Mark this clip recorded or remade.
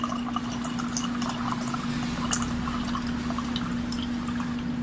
recorded